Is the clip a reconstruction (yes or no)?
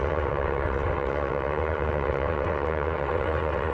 yes